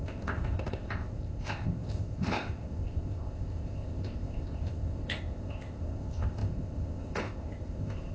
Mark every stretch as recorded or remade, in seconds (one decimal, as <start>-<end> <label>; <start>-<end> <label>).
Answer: 0.0-8.1 remade